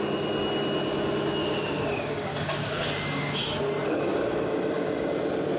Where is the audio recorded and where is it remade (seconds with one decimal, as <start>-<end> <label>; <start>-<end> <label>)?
0.0-1.4 recorded; 1.4-3.4 remade; 3.4-4.1 recorded; 4.1-5.1 remade; 5.1-5.6 recorded